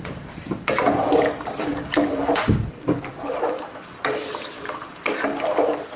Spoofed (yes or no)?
yes